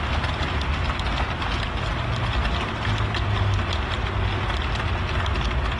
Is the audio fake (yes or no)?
no